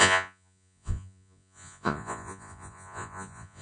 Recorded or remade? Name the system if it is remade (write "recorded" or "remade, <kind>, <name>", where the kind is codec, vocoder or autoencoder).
remade, vocoder, Vocos